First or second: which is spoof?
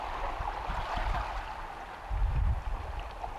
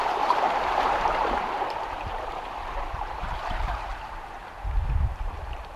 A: second